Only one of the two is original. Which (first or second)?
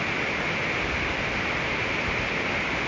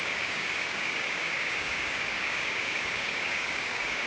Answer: first